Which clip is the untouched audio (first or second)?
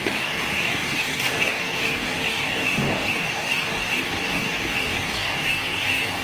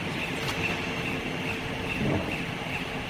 second